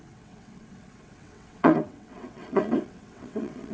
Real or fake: fake